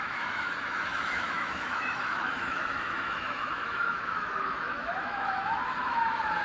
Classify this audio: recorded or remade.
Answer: remade